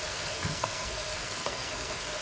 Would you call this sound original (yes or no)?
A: no